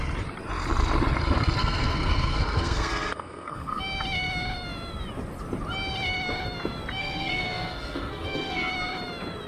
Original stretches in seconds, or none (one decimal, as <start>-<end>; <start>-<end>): 0.0-1.6; 3.8-7.0; 8.7-9.5